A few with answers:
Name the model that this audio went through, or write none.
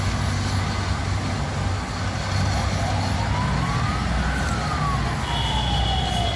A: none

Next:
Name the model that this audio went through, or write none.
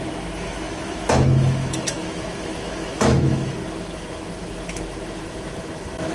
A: autoencoder, DAC-VAE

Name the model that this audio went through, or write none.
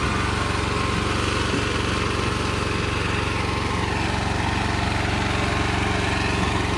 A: none